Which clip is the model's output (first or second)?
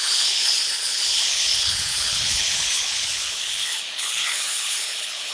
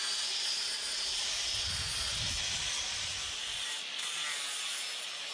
first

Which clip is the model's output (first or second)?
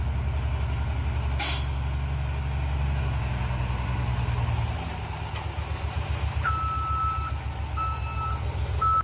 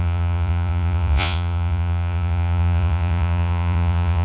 second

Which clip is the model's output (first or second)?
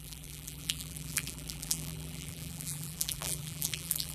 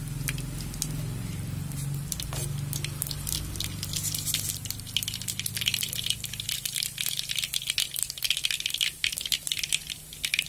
first